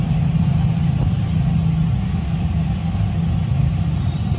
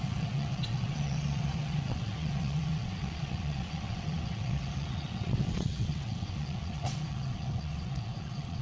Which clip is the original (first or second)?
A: first